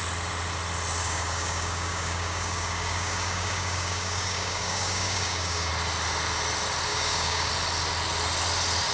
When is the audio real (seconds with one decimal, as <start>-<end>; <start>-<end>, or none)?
0.0-1.0; 5.7-6.9; 7.5-8.9